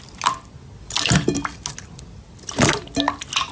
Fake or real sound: real